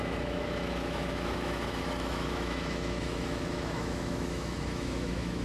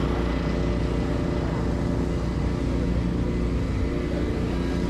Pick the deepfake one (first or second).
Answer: first